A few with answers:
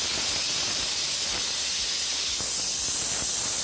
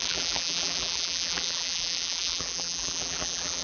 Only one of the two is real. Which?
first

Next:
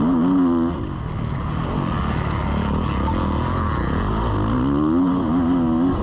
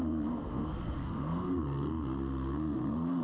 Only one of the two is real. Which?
first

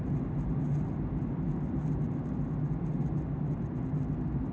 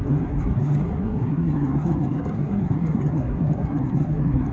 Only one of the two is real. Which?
first